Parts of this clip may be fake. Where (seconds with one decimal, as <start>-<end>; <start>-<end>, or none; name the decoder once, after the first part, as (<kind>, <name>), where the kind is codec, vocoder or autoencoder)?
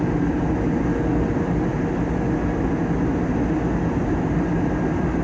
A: none